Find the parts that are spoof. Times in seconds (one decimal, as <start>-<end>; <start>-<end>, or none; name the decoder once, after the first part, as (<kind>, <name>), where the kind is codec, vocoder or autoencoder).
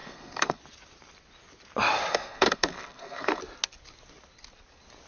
0.0-0.6 (codec, SNAC); 2.1-3.4